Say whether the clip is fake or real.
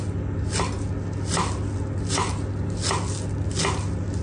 real